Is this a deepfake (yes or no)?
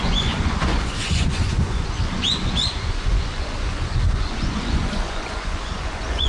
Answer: yes